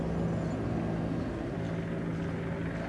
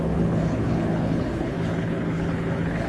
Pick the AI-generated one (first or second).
second